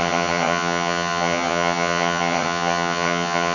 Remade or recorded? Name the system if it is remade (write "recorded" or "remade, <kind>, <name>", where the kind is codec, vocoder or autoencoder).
remade, vocoder, HiFi-GAN